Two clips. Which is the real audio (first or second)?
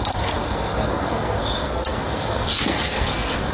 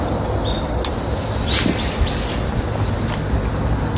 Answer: second